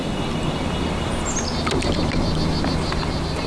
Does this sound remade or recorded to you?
recorded